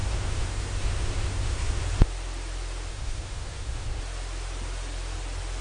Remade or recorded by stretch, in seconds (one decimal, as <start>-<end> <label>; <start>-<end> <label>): 0.0-1.8 remade; 1.8-2.9 recorded; 2.9-4.0 remade; 4.0-5.6 recorded